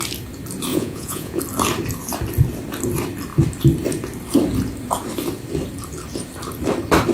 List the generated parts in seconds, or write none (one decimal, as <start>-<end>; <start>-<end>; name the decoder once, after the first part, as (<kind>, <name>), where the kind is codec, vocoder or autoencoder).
0.7-1.4 (vocoder, Vocos)